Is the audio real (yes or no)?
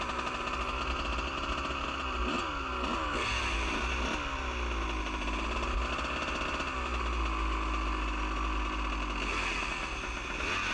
yes